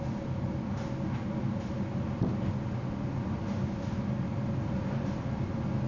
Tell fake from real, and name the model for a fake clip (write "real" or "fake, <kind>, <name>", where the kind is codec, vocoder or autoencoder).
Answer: real